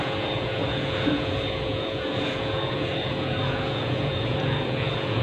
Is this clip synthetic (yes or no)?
yes